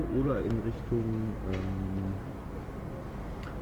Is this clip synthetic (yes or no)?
no